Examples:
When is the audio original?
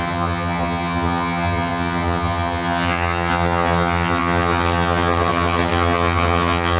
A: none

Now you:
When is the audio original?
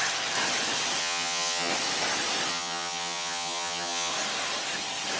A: 0.0-1.0; 1.7-2.5; 4.1-5.2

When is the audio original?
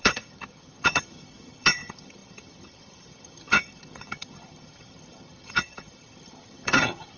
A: none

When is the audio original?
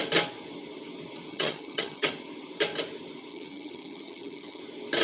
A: 0.0-1.3; 2.1-3.3; 4.6-5.0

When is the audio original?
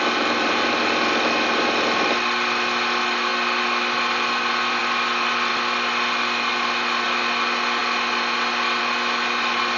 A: 0.0-9.8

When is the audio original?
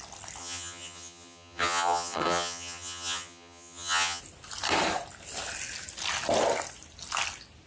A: 0.0-0.4; 4.2-7.7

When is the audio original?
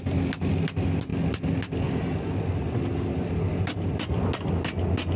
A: 0.0-5.2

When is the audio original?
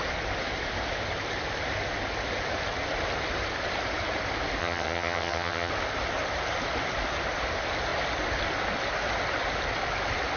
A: 0.0-4.6; 5.7-10.4